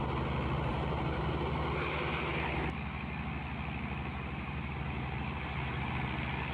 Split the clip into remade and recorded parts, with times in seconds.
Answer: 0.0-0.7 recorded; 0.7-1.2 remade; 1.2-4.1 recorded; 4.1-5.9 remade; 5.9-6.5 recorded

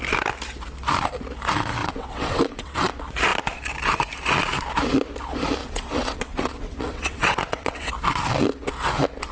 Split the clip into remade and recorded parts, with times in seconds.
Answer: 0.0-1.8 recorded; 1.8-2.9 remade; 2.9-5.6 recorded; 5.6-7.9 remade; 7.9-9.3 recorded

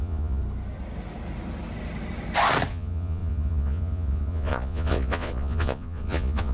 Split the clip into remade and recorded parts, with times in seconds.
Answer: 0.0-0.4 remade; 0.4-2.7 recorded; 2.7-6.5 remade

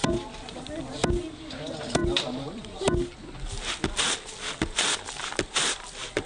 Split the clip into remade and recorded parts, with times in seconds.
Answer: 0.0-2.0 recorded; 2.0-2.6 remade; 2.6-6.3 recorded

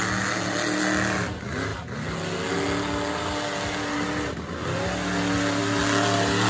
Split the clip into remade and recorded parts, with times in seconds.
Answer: 0.0-6.5 recorded

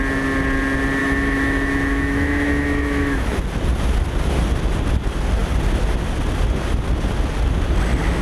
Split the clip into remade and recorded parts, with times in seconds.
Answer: 0.0-1.0 recorded; 1.0-3.4 remade; 3.4-8.2 recorded

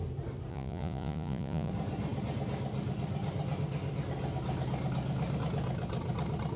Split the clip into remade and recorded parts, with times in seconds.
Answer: 0.0-0.5 recorded; 0.5-1.7 remade; 1.7-6.6 recorded

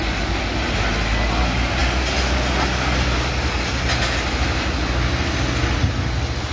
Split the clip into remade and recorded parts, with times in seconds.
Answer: 0.0-6.5 recorded